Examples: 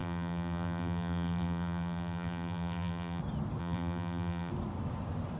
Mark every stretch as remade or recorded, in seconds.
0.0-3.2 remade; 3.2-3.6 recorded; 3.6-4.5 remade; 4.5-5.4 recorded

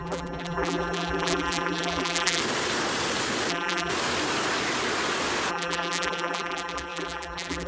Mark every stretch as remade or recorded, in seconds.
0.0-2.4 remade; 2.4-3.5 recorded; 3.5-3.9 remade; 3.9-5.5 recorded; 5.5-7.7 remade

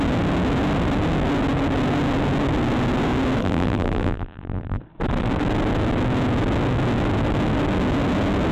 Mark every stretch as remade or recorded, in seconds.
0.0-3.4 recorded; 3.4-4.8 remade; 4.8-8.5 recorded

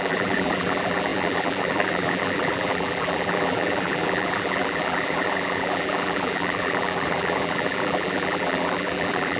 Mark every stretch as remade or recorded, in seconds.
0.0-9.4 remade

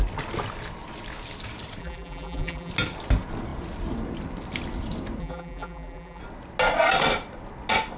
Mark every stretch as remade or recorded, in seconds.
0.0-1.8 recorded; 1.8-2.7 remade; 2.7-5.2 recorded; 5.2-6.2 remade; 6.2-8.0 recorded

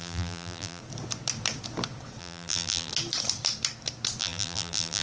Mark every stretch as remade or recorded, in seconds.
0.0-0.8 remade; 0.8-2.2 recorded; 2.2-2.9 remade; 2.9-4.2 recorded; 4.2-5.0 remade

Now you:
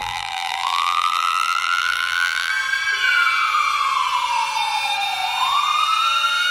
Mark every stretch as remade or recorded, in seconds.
0.0-2.5 remade; 2.5-6.5 recorded